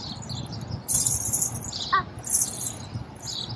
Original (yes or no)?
yes